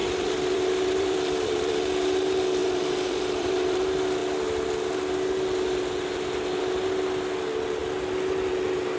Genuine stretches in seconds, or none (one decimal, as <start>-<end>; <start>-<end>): 1.8-2.6; 3.8-9.0